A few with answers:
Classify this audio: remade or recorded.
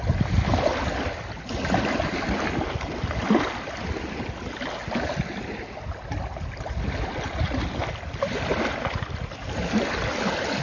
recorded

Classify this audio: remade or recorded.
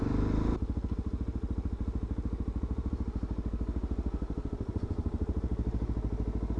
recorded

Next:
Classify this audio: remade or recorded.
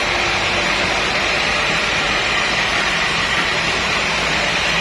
remade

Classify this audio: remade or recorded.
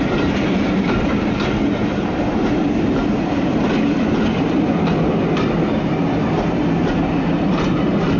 recorded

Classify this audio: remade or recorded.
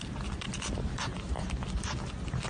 recorded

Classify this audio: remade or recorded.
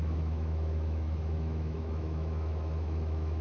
remade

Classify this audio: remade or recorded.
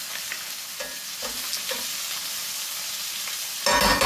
recorded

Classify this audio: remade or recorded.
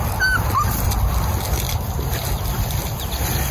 recorded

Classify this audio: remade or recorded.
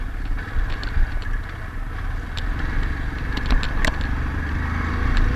recorded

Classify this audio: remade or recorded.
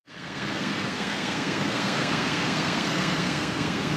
remade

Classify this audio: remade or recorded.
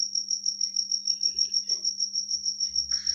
recorded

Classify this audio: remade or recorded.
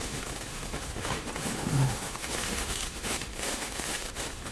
remade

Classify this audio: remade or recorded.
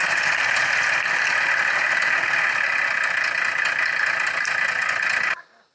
recorded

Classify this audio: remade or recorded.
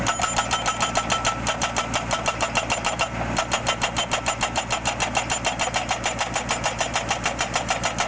recorded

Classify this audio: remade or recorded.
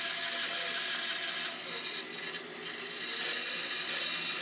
recorded